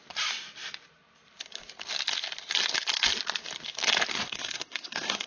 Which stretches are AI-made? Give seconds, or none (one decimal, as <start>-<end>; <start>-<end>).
4.1-5.3